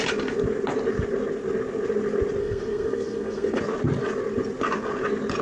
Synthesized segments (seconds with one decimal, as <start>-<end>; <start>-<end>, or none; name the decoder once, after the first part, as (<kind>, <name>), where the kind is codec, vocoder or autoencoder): 2.4-3.6 (codec, SNAC)